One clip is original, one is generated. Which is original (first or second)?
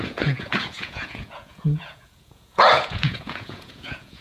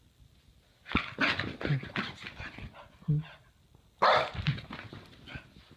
second